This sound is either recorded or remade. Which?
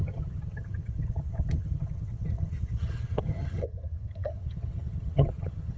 remade